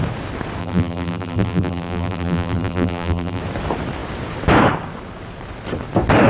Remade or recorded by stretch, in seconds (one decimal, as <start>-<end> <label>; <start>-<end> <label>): 0.0-0.6 recorded; 0.6-3.4 remade; 3.4-6.3 recorded